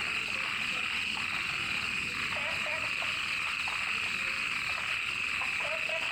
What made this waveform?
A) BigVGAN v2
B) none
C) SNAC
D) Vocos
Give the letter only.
B